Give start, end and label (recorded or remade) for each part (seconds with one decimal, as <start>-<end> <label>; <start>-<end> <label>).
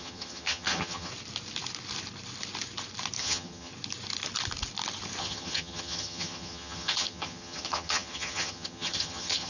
0.0-1.1 remade; 1.1-3.2 recorded; 3.2-3.7 remade; 3.7-5.2 recorded; 5.2-9.5 remade